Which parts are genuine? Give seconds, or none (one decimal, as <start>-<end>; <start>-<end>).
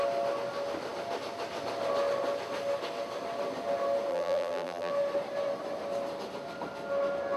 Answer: 0.0-4.1; 4.9-7.4